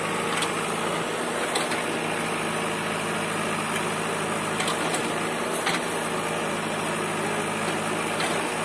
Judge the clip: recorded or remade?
recorded